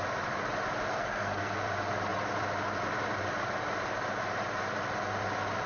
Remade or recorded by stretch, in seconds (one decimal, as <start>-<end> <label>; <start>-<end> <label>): 0.0-0.9 recorded; 0.9-1.6 remade; 1.6-5.7 recorded